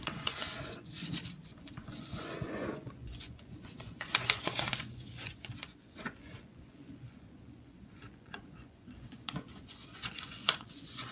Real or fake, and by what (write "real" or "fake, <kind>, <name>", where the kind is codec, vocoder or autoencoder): fake, vocoder, Vocos